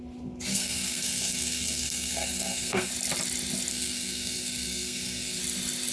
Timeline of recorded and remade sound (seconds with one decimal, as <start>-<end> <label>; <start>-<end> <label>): 0.0-0.5 recorded; 0.5-2.9 remade; 2.9-3.7 recorded; 3.7-5.4 remade; 5.4-5.9 recorded